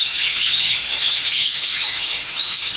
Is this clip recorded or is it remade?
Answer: remade